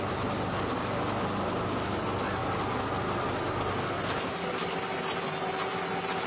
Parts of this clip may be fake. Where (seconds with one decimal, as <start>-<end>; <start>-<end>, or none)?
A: none